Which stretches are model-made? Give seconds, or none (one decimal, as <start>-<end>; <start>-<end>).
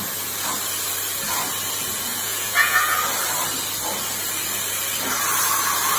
2.1-3.0